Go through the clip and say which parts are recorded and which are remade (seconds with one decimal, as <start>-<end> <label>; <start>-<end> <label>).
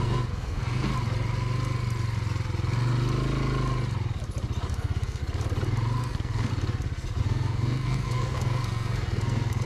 0.0-0.9 remade; 0.9-4.7 recorded; 4.7-5.2 remade; 5.2-6.0 recorded; 6.0-6.5 remade; 6.5-7.2 recorded; 7.2-9.7 remade